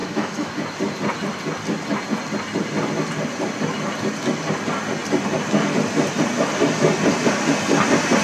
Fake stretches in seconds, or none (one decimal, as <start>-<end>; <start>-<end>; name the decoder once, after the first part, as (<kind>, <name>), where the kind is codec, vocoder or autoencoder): 0.0-0.5 (autoencoder, DAC-VAE)